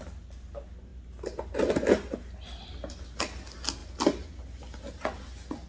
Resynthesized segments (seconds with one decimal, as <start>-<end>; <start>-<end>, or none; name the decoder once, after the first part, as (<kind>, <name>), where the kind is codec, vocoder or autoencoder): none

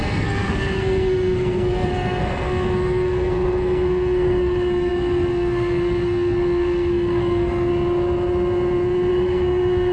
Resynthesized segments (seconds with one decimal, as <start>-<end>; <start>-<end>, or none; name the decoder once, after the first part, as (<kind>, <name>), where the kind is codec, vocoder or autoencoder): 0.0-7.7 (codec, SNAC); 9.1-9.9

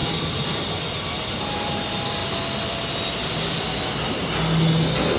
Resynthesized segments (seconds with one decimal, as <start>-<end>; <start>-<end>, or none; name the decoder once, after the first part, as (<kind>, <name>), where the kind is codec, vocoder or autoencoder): 1.3-2.2 (vocoder, BigVGAN v2)

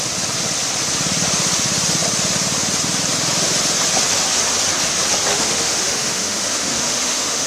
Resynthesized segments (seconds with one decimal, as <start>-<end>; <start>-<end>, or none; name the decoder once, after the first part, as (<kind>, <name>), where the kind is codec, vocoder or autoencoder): 5.3-7.5 (autoencoder, DAC-VAE)

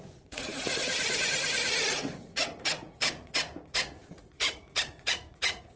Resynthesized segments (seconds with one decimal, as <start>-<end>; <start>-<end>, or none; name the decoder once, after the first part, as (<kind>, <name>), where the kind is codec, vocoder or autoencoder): 0.0-5.8 (vocoder, Vocos)

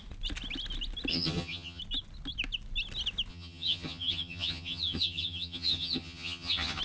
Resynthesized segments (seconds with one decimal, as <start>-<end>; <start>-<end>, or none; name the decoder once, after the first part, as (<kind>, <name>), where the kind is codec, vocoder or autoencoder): 1.1-1.8 (vocoder, HiFi-GAN); 3.3-6.8

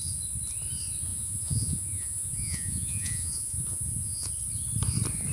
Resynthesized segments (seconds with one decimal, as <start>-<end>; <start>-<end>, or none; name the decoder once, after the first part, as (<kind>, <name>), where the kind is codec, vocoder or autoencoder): 1.1-4.3 (vocoder, Vocos)